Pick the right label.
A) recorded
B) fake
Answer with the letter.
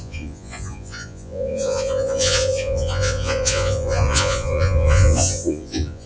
B